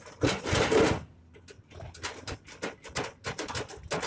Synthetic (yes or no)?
no